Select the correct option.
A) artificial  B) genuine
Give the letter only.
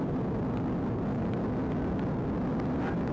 B